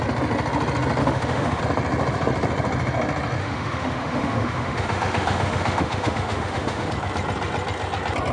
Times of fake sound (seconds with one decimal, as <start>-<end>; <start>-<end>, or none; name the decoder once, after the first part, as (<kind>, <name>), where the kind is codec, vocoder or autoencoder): 1.0-1.6 (autoencoder, DAC-VAE); 3.4-6.9